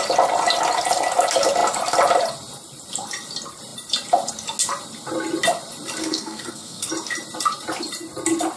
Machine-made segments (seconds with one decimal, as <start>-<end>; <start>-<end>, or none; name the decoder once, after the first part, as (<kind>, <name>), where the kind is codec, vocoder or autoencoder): 6.0-6.9 (codec, SNAC)